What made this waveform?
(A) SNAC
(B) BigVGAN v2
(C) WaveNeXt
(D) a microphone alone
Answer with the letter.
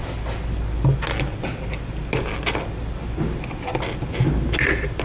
D